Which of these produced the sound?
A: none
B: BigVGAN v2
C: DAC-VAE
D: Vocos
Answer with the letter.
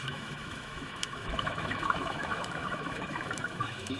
C